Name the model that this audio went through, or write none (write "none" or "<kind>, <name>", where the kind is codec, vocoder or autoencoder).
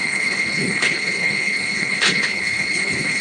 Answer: codec, HILCodec